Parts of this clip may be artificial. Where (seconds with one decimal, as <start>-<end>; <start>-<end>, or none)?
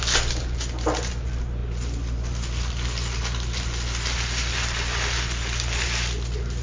none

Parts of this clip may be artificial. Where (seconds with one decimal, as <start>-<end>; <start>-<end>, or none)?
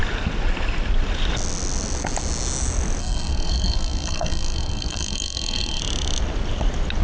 3.0-5.8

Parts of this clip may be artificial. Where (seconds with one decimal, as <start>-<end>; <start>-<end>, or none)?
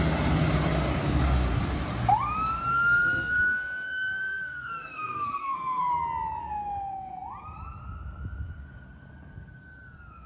2.7-5.9; 6.4-7.1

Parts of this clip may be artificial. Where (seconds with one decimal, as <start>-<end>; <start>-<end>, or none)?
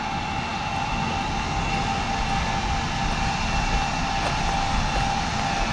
none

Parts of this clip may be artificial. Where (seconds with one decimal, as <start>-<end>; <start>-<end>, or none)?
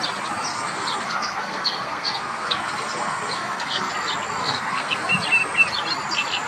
0.5-3.9; 4.4-5.1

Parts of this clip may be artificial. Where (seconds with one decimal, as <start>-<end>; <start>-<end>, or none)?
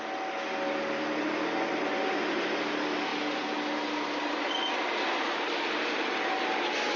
3.1-4.7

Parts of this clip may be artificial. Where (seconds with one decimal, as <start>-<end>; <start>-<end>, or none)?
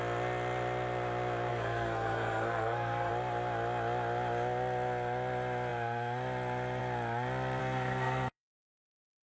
1.5-3.1; 7.6-9.2